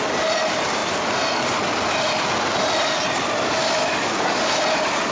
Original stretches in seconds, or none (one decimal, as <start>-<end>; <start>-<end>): 0.0-5.1